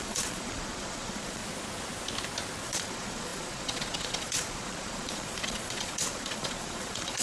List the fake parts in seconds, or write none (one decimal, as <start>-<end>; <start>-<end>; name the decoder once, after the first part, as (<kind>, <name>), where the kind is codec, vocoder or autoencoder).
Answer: 0.0-1.4 (vocoder, Vocos); 2.6-7.2